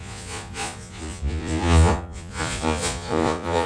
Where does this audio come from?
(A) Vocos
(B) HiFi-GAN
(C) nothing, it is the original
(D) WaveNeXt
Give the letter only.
A